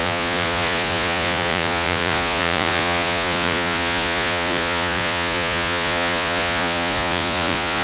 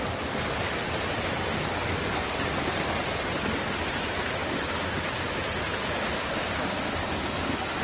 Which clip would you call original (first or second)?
second